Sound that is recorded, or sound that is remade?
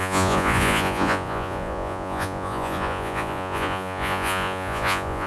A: remade